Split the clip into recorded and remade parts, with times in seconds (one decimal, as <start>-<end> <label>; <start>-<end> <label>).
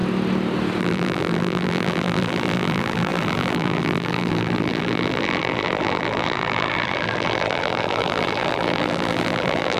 0.0-0.8 recorded; 0.8-9.8 remade